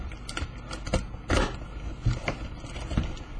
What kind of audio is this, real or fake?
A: real